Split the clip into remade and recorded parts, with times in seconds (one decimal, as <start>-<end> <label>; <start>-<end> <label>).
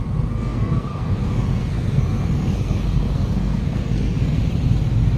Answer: 0.0-4.4 remade; 4.4-5.2 recorded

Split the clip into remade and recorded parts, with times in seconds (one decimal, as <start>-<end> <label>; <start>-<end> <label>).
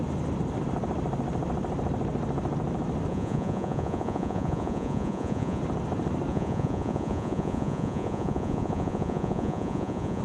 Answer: 0.0-3.1 recorded; 3.1-5.6 remade; 5.6-6.3 recorded; 6.3-10.2 remade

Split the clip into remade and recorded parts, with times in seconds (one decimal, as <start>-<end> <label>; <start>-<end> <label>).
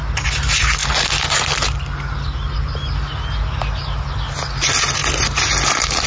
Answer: 0.0-6.1 recorded